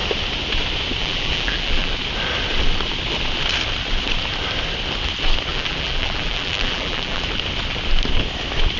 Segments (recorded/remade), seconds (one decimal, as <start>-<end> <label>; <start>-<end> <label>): 0.0-1.0 recorded; 1.0-1.9 remade; 1.9-5.5 recorded; 5.5-7.3 remade; 7.3-8.8 recorded